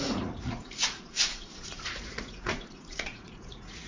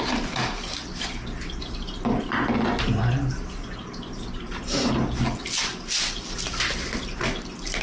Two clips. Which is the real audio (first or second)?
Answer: second